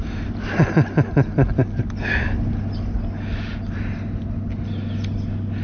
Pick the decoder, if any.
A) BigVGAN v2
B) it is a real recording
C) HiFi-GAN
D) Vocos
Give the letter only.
B